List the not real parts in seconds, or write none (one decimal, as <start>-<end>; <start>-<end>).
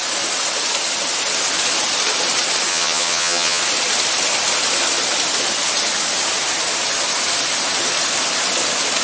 2.7-3.6